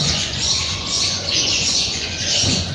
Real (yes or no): no